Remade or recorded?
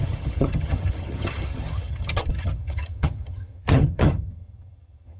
remade